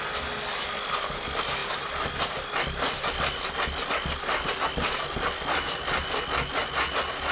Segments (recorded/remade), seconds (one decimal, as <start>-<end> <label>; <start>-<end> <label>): 0.0-7.3 recorded